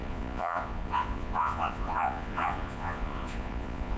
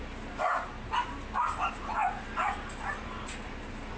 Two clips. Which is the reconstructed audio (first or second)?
first